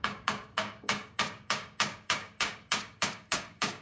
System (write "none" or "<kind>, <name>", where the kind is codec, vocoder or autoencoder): codec, DAC